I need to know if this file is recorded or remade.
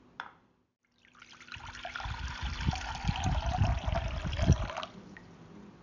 remade